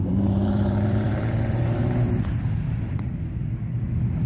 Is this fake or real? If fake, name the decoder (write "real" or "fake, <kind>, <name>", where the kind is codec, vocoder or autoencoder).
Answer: fake, vocoder, BigVGAN v2